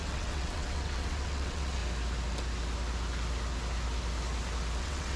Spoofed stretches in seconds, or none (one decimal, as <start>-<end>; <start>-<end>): 0.0-1.8; 4.8-5.2

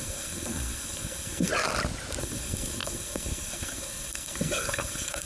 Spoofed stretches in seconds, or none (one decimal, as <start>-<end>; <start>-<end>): 0.0-1.5; 2.2-5.2

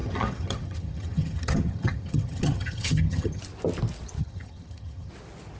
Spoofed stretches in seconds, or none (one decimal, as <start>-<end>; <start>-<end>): 0.0-3.4; 4.2-5.1

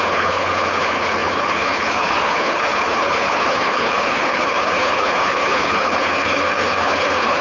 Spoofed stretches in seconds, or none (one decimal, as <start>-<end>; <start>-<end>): 0.0-7.4